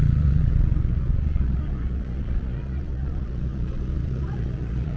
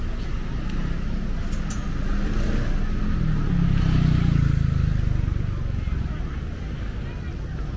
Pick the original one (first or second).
second